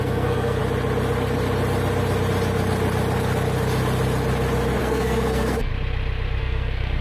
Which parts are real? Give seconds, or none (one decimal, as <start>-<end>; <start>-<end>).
0.6-4.8; 5.7-6.4

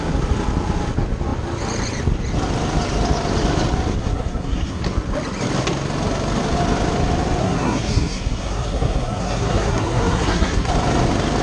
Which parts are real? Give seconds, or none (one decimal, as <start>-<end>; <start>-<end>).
0.0-4.0; 4.8-7.4; 10.7-11.4

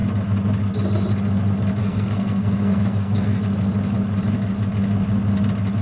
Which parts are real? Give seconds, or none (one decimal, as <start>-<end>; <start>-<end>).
0.0-1.8; 3.4-5.8

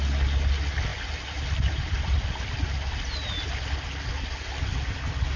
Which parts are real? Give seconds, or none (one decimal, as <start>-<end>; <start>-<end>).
0.0-5.4

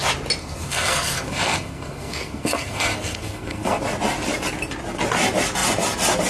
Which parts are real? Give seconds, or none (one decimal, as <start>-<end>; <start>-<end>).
0.0-0.4; 3.8-6.3